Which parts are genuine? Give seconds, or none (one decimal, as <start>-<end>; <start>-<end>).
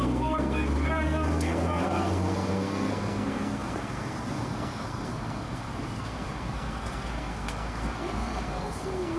none